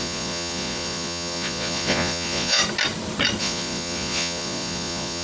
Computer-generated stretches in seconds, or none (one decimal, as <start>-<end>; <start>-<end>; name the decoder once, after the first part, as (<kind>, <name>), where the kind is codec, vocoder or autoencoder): 0.0-2.6 (vocoder, Vocos); 3.4-5.2